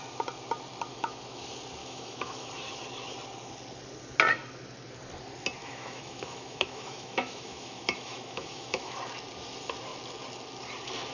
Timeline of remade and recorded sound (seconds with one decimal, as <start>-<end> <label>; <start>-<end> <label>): 0.0-0.9 recorded; 0.9-1.4 remade; 1.4-1.8 recorded; 1.8-2.5 remade; 2.5-5.6 recorded; 5.6-9.0 remade; 9.0-11.1 recorded